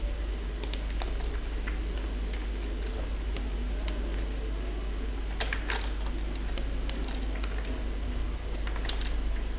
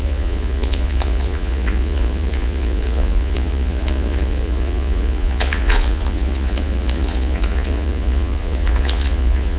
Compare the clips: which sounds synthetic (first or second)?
second